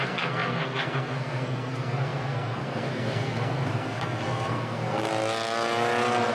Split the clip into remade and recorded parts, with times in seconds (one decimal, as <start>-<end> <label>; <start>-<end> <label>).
0.0-5.1 remade; 5.1-6.3 recorded